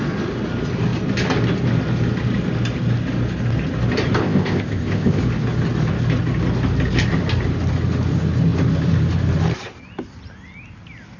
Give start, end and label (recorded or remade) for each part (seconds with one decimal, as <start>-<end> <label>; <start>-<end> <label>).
0.0-4.2 recorded; 4.2-5.2 remade; 5.2-11.2 recorded